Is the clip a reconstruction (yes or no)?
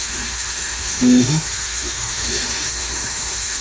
yes